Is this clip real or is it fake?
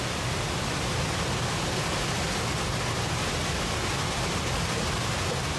real